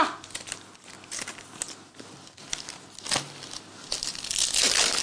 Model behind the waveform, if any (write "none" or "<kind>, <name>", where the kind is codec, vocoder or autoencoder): none